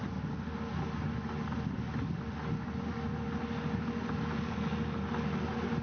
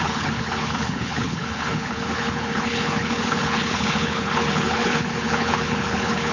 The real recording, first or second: first